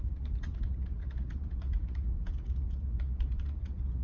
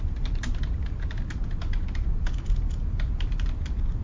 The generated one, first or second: first